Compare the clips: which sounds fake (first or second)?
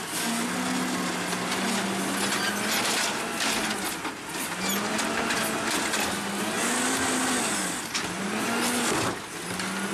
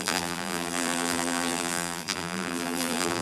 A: second